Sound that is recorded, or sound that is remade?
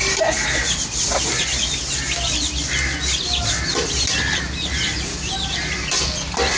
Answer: recorded